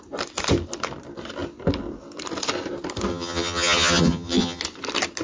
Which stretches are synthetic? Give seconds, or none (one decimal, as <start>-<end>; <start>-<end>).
3.1-4.6

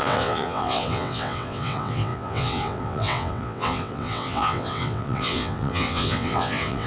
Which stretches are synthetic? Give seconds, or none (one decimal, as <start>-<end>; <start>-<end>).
0.0-6.9

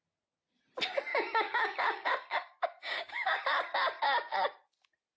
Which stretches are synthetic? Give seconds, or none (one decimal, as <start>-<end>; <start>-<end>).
1.1-3.4

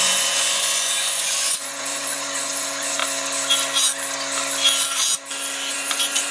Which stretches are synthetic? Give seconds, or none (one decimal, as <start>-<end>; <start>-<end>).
0.0-3.0; 5.7-6.3

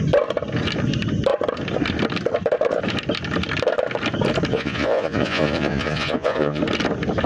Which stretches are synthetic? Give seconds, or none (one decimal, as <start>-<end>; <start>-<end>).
4.5-6.6

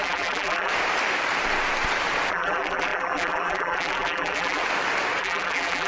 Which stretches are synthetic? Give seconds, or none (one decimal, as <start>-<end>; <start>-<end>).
0.0-0.7; 2.3-4.6; 5.2-5.9

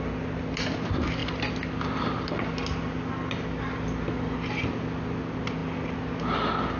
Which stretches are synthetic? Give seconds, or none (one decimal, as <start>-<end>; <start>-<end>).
none